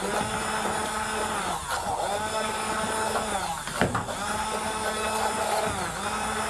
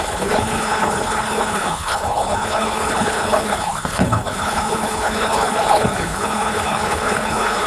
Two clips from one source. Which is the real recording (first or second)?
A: first